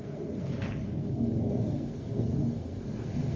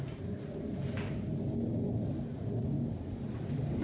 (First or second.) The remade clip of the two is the first